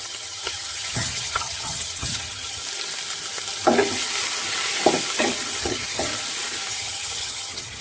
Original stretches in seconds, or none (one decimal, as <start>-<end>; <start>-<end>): 2.6-5.6; 6.1-6.7